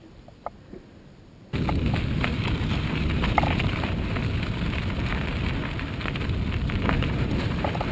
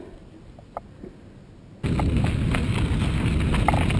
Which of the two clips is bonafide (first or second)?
second